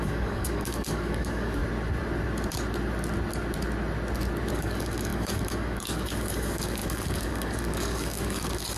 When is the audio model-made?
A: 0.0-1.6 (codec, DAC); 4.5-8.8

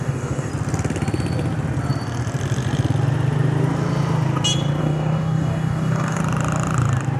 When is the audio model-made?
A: 0.0-0.5 (codec, DAC); 4.8-6.2